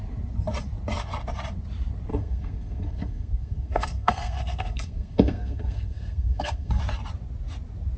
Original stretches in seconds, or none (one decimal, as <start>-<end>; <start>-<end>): 0.0-2.1; 6.8-8.0